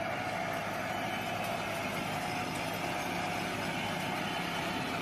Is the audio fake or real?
real